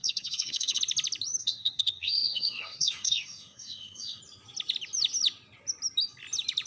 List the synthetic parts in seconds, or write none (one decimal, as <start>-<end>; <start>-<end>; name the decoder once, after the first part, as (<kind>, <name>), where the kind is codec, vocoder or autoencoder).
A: 0.0-0.8 (codec, SNAC); 1.4-4.2